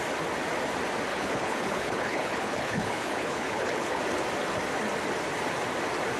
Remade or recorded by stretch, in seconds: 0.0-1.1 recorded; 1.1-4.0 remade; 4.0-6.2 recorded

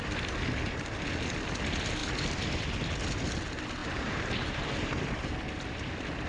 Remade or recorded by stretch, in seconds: 0.0-3.8 recorded; 3.8-5.3 remade; 5.3-6.3 recorded

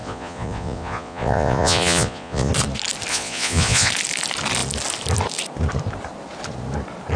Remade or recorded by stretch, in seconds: 0.0-2.5 remade; 2.5-3.1 recorded; 3.1-3.9 remade; 3.9-7.2 recorded